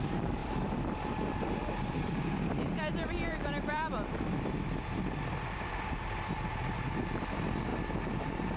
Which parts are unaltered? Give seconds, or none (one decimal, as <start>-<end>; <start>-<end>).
7.7-8.2